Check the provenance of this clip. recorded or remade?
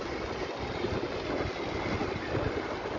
recorded